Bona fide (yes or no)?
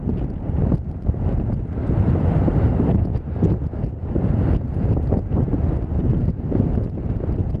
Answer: yes